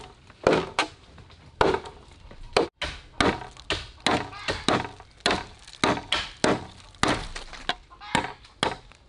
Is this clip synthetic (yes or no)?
no